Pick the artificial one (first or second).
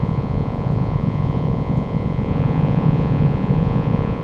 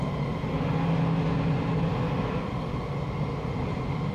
first